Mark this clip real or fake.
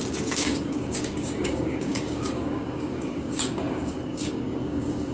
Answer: fake